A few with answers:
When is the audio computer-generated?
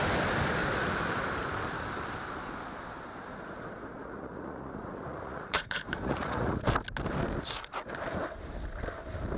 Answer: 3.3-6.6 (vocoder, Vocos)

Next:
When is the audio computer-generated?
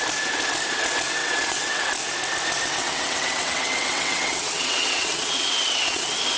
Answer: 1.2-1.8 (vocoder, WaveNeXt); 2.8-6.0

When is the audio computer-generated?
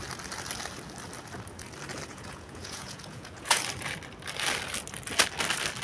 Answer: 2.1-3.6 (vocoder, Vocos)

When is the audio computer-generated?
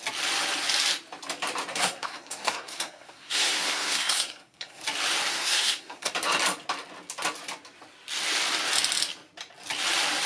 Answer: 1.7-4.8 (codec, SNAC); 5.3-6.1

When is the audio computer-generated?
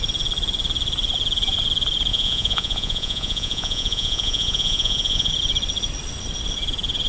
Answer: 2.1-5.3 (vocoder, Vocos)